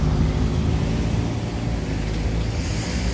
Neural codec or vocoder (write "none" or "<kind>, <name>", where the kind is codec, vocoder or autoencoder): none